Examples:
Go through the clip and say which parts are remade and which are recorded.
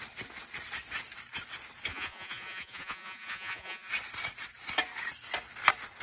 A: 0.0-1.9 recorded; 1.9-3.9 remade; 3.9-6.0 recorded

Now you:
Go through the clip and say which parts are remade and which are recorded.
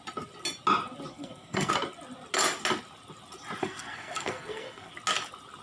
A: 0.0-1.1 recorded; 1.1-1.7 remade; 1.7-3.6 recorded; 3.6-4.9 remade; 4.9-5.6 recorded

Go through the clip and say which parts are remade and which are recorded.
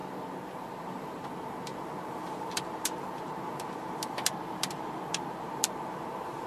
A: 0.0-0.8 recorded; 0.8-6.5 remade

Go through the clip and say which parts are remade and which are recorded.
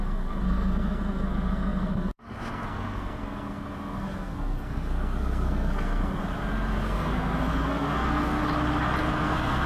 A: 0.0-6.2 remade; 6.2-6.7 recorded; 6.7-8.4 remade; 8.4-9.0 recorded; 9.0-9.7 remade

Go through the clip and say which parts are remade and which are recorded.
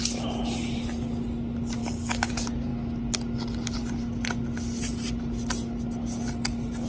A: 0.0-1.8 recorded; 1.8-2.3 remade; 2.3-6.9 recorded